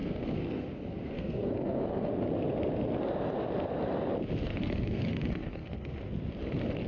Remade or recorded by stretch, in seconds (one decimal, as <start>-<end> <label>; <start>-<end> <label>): 0.0-2.1 remade; 2.1-4.6 recorded; 4.6-6.0 remade; 6.0-6.9 recorded